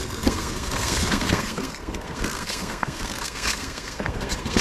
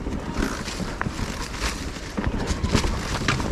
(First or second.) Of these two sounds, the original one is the second